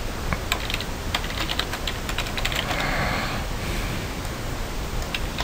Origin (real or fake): real